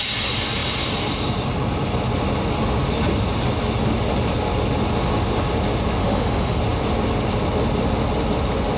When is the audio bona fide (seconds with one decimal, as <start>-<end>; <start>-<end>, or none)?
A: 0.0-6.0; 6.6-8.8